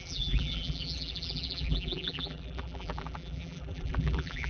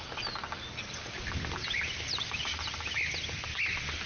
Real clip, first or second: second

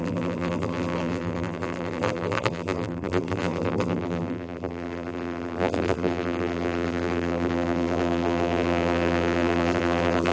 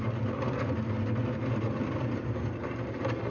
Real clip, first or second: second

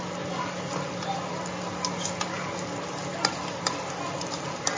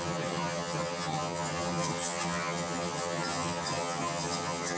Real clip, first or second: first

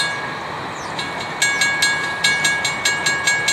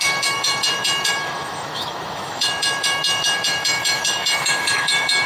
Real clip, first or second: first